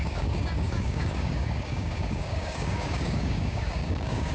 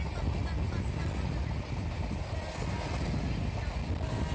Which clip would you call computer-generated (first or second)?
first